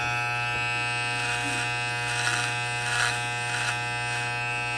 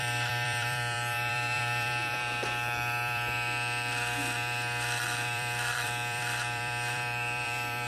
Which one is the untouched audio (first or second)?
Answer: first